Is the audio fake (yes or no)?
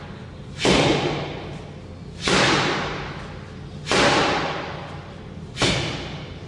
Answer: no